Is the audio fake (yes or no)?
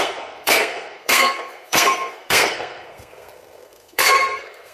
yes